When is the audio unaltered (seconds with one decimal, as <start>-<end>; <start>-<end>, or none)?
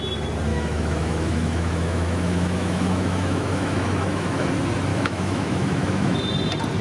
0.0-0.5; 4.5-4.9; 6.2-6.8